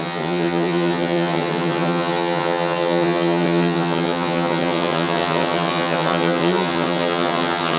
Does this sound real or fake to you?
fake